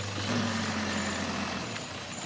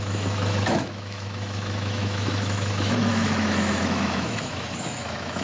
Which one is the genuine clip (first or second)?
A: first